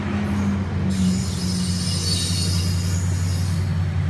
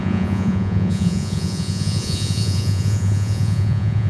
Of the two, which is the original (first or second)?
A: first